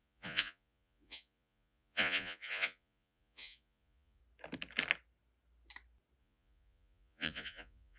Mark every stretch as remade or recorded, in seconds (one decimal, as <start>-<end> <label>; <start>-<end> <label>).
0.0-4.2 remade; 4.2-6.2 recorded; 6.2-8.0 remade